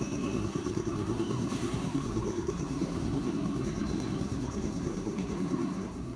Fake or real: fake